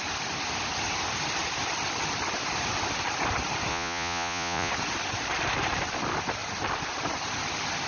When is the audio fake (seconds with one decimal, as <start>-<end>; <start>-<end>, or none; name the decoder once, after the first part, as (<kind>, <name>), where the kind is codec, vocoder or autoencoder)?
3.7-4.7 (vocoder, Vocos)